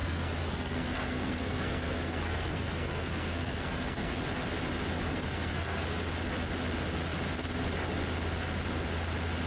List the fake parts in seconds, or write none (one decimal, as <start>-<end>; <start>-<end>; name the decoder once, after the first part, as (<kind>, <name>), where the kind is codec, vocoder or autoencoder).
0.0-4.2 (codec, SNAC); 5.1-6.0